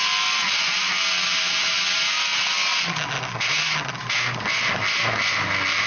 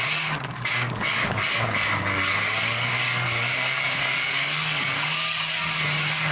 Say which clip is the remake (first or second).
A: second